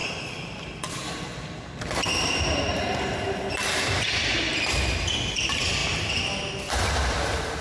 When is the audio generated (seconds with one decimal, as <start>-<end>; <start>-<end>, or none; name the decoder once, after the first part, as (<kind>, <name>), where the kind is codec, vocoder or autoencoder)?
0.0-5.8 (vocoder, BigVGAN v2); 6.7-7.6